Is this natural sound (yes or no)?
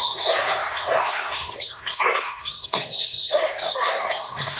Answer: no